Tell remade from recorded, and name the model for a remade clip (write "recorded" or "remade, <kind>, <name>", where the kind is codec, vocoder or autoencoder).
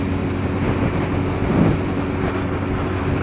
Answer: recorded